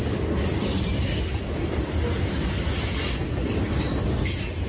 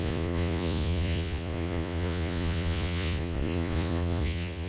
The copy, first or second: second